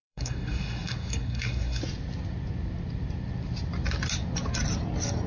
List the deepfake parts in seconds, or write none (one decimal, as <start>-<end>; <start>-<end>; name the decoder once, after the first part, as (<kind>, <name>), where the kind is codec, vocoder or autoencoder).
0.0-1.8 (codec, SNAC)